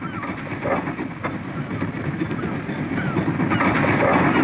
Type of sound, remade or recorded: recorded